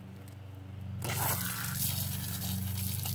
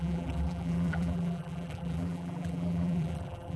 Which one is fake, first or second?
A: second